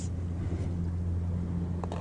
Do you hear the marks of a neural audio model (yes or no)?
no